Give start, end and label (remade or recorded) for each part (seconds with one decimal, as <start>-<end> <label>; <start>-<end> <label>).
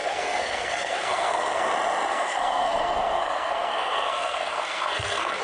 0.0-1.7 remade; 1.7-2.1 recorded; 2.1-5.4 remade